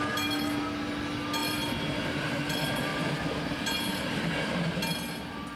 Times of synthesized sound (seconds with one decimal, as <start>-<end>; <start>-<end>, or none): 1.4-2.4; 2.9-3.6